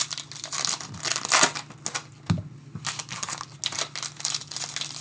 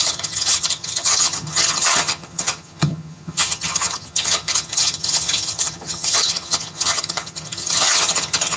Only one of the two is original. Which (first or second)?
first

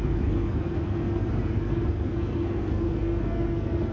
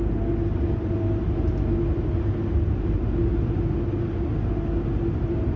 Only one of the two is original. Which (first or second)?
second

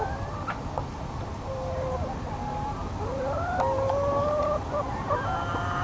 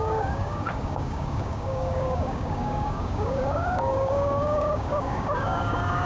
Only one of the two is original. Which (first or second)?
first